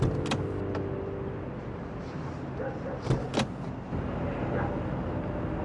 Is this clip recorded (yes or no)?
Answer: yes